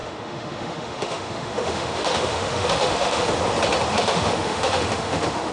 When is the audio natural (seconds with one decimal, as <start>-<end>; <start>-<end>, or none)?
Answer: 3.3-3.9